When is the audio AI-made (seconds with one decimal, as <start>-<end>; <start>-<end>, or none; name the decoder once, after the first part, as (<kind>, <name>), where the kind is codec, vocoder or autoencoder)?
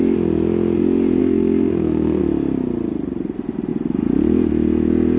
1.2-2.2 (codec, SNAC)